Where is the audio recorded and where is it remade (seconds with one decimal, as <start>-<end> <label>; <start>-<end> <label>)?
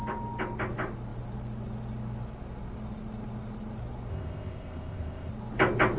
0.0-4.1 recorded; 4.1-5.3 remade; 5.3-6.0 recorded